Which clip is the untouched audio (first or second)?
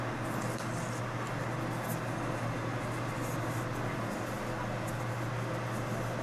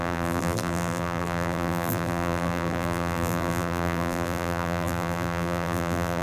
first